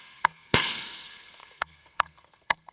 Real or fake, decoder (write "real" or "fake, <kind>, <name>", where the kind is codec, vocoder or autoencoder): fake, codec, SNAC